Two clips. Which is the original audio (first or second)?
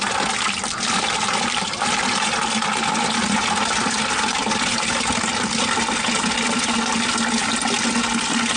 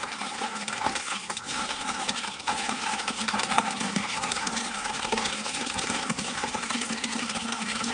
first